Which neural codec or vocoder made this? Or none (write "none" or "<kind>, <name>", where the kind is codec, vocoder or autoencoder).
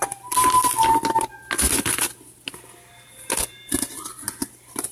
none